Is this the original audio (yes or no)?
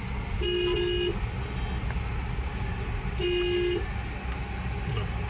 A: yes